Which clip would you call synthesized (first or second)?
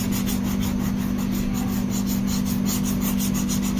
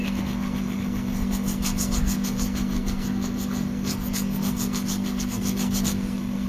second